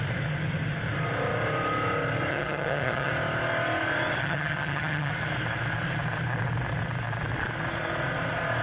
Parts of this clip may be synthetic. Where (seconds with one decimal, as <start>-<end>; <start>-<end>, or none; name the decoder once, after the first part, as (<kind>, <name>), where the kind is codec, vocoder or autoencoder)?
2.3-3.1 (vocoder, HiFi-GAN); 4.2-5.1